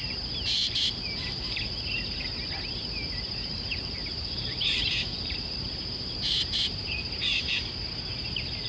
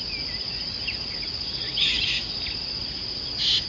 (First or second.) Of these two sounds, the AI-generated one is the first